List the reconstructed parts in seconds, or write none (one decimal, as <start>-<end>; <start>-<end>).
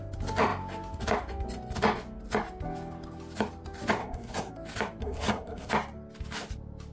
4.0-4.5; 5.0-5.7